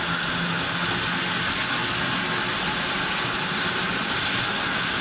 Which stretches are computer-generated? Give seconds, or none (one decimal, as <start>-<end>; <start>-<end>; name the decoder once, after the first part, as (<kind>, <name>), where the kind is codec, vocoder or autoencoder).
none